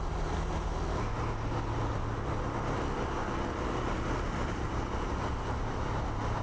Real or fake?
real